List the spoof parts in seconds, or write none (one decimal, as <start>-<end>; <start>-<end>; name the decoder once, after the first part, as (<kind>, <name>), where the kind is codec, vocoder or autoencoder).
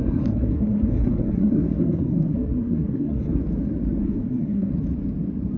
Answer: 0.0-3.4 (codec, SNAC); 4.0-4.7